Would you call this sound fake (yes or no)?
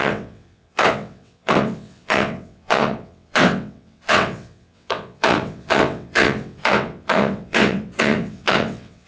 yes